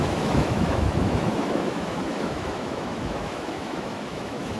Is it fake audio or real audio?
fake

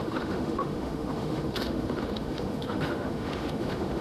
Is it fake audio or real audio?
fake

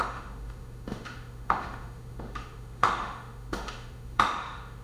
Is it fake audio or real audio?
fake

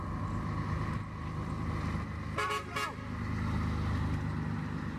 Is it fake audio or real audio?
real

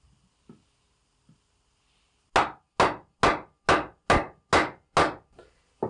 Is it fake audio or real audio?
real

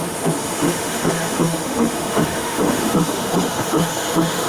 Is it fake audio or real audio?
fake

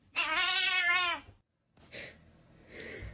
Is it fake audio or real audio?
real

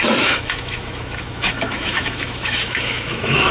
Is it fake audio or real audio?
fake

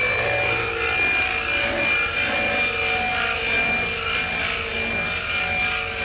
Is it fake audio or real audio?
real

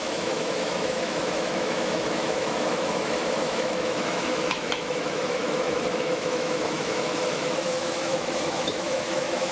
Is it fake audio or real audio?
fake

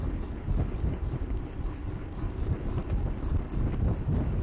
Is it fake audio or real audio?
real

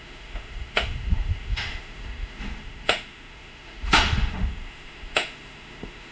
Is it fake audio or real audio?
fake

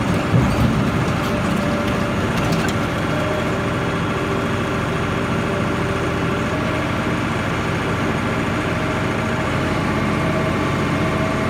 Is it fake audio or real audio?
real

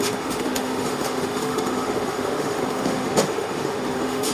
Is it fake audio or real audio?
fake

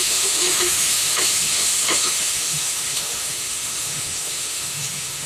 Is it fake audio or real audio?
fake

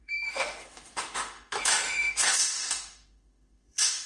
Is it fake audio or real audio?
fake